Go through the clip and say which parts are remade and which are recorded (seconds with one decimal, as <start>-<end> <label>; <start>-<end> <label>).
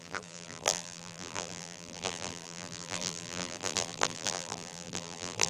0.0-5.5 remade